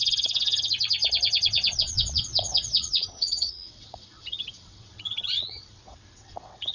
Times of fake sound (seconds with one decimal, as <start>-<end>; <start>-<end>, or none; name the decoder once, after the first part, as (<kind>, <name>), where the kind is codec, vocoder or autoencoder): 0.0-6.7 (vocoder, WaveNeXt)